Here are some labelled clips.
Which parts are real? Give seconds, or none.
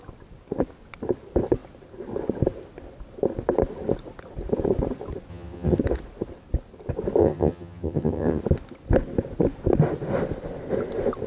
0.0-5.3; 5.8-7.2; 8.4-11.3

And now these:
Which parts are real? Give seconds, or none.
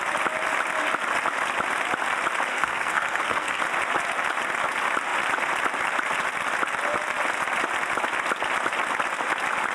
0.0-2.5; 3.6-9.7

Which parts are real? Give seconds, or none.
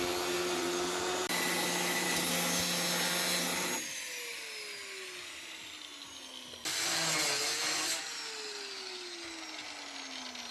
0.0-10.5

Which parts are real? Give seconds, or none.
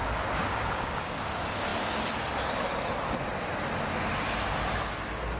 1.2-5.4